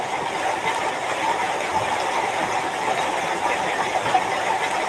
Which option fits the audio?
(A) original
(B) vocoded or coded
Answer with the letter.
A